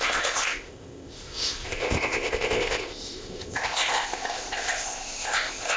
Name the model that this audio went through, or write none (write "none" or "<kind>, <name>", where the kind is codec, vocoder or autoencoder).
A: codec, ZipCodec